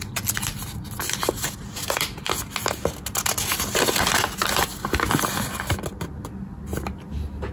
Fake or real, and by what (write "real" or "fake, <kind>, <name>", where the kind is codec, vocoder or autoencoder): real